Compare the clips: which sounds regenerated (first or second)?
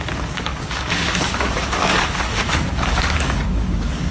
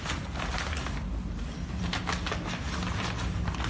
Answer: first